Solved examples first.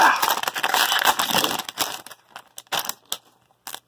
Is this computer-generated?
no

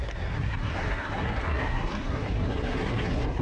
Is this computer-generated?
yes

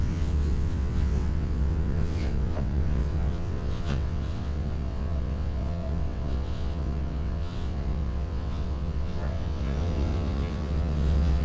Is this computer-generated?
yes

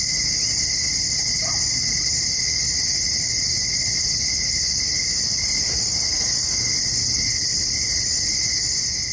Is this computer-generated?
no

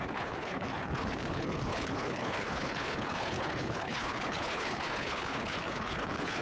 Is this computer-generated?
yes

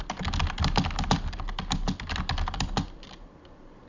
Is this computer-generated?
no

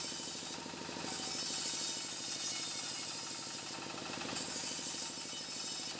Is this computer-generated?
no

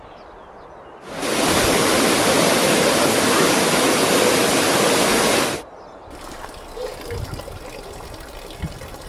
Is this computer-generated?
no